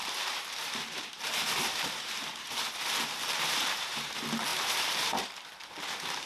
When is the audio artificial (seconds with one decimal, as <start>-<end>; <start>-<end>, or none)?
0.0-2.7; 3.2-4.1; 4.5-5.3